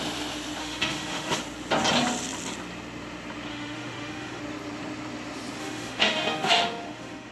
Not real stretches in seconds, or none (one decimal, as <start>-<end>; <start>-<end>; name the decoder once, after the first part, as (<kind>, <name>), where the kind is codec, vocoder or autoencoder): 0.6-1.4 (autoencoder, DAC-VAE); 3.5-4.4; 5.6-7.3